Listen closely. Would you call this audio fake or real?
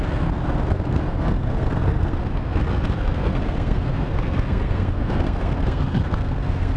fake